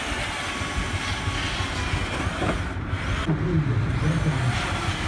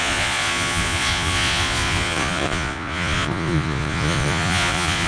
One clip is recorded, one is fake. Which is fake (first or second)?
second